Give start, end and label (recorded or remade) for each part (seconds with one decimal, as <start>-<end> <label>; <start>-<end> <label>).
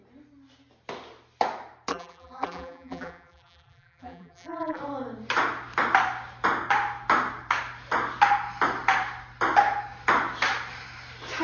0.0-1.9 recorded; 1.9-4.8 remade; 4.8-11.4 recorded